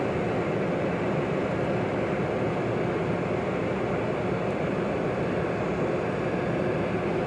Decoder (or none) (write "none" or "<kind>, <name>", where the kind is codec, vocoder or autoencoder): none